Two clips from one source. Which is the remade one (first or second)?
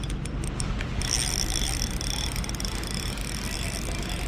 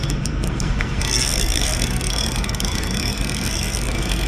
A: second